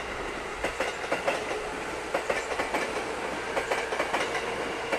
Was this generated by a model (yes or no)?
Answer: no